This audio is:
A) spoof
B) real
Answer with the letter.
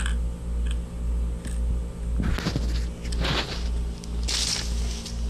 B